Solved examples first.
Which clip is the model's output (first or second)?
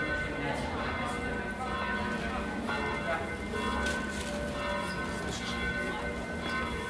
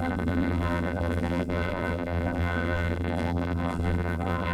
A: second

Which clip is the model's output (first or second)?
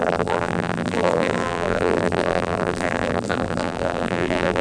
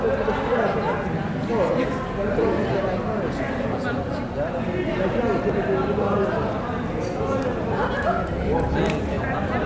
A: first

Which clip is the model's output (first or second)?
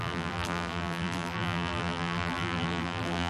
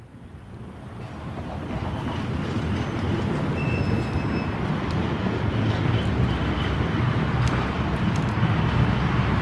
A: first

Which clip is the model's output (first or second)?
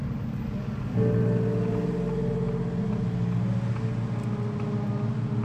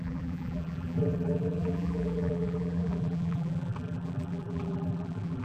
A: second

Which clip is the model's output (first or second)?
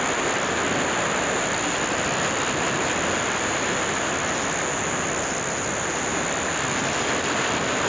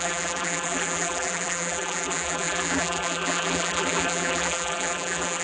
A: second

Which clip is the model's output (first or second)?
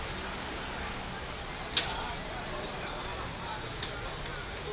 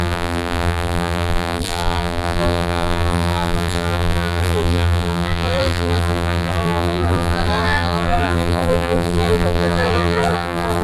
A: second